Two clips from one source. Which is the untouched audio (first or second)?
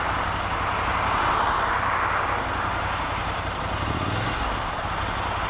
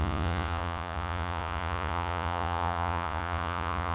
first